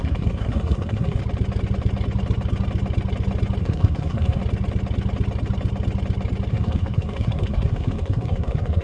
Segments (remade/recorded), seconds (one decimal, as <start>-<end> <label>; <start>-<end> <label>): 0.0-1.2 remade; 1.2-3.6 recorded; 3.6-4.4 remade; 4.4-6.5 recorded; 6.5-8.8 remade